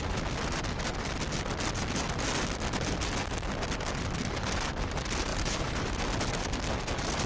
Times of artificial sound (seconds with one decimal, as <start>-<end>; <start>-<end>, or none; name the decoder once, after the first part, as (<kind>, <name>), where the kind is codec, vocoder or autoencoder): 5.3-6.0 (vocoder, BigVGAN v2)